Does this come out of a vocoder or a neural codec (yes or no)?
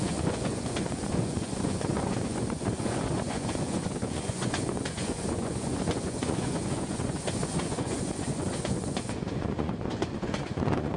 yes